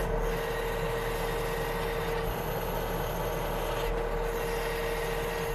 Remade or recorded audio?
recorded